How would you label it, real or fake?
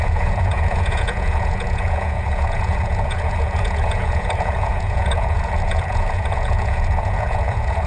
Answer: fake